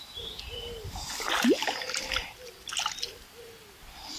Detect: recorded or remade recorded